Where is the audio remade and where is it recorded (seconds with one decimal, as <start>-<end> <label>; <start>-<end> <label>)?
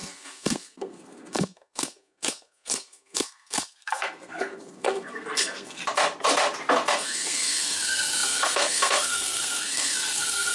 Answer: 0.0-5.8 remade; 5.8-6.9 recorded; 6.9-10.5 remade